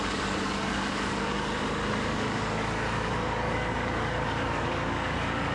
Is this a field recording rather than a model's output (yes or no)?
no